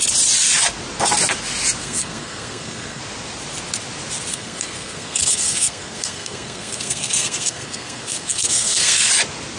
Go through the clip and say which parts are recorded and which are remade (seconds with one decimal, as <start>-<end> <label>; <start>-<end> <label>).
0.0-1.8 recorded; 1.8-3.0 remade; 3.0-4.3 recorded; 4.3-9.1 remade; 9.1-9.6 recorded